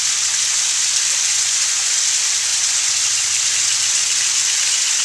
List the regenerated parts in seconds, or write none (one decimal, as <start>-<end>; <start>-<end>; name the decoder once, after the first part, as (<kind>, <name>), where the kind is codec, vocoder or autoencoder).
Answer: 1.3-1.9 (vocoder, Vocos); 2.5-3.0